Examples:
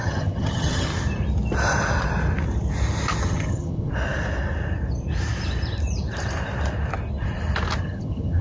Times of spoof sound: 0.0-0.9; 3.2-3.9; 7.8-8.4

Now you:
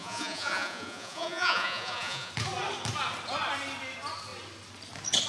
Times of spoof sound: 0.0-2.3

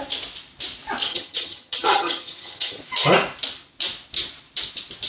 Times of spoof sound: 1.0-2.8

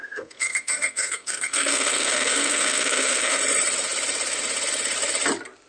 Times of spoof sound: 0.0-3.4

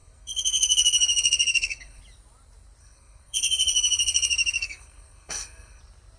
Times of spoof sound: 0.0-2.0; 2.8-5.8